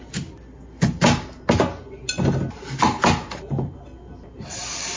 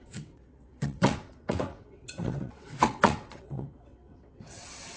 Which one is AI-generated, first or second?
second